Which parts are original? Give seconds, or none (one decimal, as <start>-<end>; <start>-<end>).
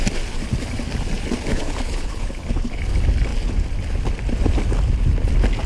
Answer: 0.0-1.5; 2.8-5.7